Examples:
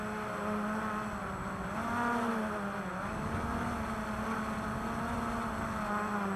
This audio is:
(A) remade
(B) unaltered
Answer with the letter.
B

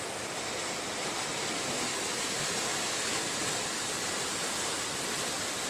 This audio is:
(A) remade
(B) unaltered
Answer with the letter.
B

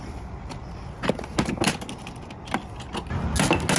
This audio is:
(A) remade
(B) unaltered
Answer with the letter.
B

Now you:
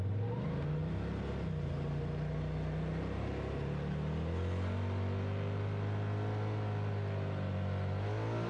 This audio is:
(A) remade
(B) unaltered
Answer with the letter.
B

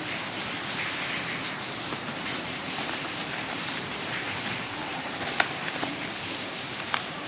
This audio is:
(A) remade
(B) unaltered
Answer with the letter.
A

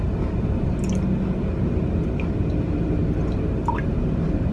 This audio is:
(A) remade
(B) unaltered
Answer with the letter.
B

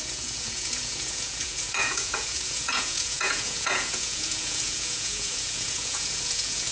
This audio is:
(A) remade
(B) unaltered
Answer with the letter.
A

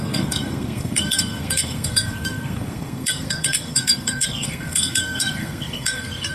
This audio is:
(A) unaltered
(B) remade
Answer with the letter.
B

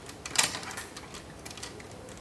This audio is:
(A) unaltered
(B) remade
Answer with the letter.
A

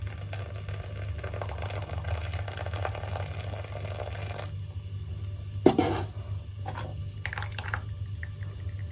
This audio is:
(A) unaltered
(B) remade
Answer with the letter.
A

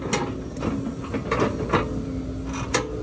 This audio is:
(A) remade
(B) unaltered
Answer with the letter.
B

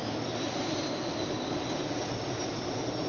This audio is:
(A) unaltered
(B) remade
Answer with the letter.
A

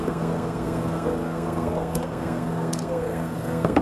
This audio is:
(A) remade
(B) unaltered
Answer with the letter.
A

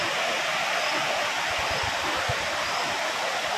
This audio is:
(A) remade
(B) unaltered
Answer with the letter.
B